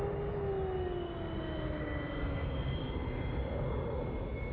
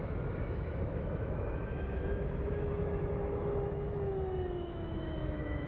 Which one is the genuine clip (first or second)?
first